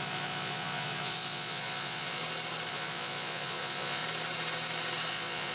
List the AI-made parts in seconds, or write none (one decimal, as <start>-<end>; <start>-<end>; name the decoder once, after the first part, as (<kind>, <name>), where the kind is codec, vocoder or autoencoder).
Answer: 0.0-2.2 (vocoder, Vocos); 2.7-4.0; 5.1-5.5